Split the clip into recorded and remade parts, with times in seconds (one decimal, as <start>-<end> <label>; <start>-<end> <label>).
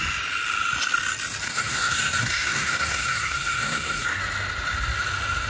0.0-1.4 recorded; 1.4-4.2 remade; 4.2-5.5 recorded